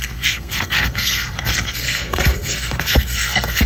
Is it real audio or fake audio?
fake